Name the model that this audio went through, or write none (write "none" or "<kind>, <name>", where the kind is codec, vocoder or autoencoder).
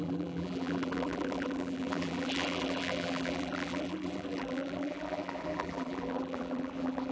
vocoder, BigVGAN v2